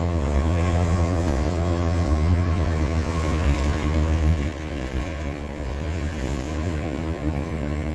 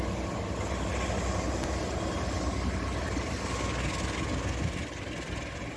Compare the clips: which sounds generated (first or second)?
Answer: first